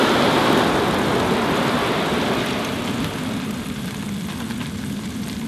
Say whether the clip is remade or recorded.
recorded